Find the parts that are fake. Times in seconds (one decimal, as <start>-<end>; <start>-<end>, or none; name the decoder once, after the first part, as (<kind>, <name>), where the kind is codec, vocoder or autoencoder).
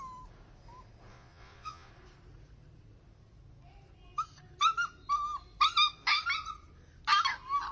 1.1-1.9 (vocoder, Vocos)